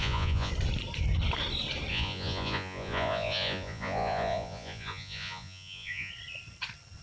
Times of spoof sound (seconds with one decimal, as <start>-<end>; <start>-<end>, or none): 0.0-0.5; 1.9-6.1